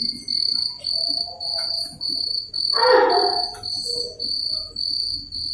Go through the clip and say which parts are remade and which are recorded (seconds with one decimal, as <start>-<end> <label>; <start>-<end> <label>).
0.0-1.5 recorded; 1.5-2.5 remade; 2.5-5.5 recorded